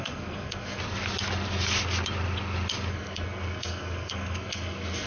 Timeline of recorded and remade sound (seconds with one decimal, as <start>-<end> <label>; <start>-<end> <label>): 0.0-0.8 remade; 0.8-2.9 recorded; 2.9-5.1 remade